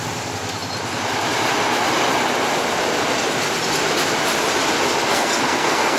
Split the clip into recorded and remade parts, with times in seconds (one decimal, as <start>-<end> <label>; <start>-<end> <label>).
0.0-5.1 recorded; 5.1-6.0 remade